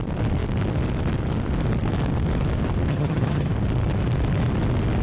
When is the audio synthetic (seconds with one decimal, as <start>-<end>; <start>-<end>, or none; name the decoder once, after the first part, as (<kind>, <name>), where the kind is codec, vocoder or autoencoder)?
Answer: 2.9-3.5 (vocoder, HiFi-GAN)